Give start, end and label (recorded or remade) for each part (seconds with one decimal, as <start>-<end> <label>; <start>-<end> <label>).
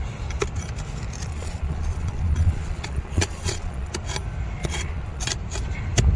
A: 0.0-1.3 recorded; 1.3-3.9 remade; 3.9-4.6 recorded; 4.6-5.3 remade; 5.3-6.2 recorded